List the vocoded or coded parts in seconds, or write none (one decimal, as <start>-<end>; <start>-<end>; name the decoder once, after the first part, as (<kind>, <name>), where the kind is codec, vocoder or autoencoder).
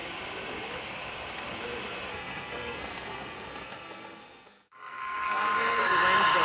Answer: 2.1-5.9 (codec, SNAC)